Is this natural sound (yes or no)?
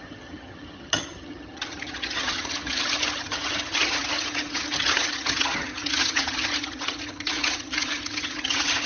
no